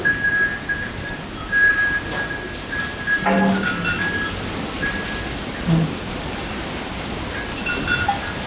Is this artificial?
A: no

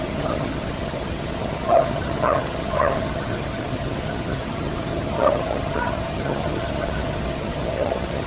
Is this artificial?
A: yes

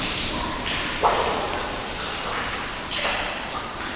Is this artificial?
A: no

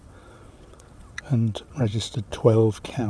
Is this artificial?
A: yes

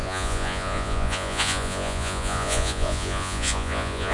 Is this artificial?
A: yes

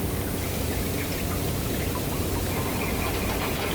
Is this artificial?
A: no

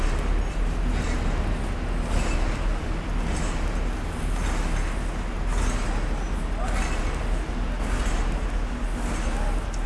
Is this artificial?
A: no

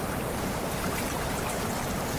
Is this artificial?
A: yes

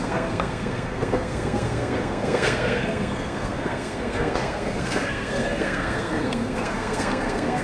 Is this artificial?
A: yes